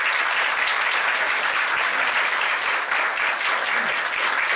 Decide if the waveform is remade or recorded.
recorded